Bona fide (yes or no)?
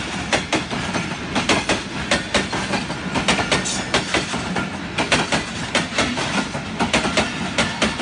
yes